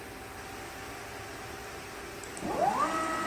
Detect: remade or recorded recorded